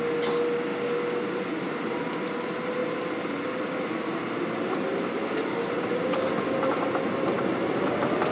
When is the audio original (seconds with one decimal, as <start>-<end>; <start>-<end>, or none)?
0.0-0.7; 1.4-8.3